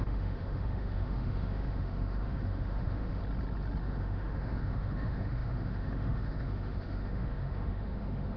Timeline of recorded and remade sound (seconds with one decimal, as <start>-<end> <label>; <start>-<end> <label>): 0.0-3.2 remade; 3.2-3.8 recorded; 3.8-8.4 remade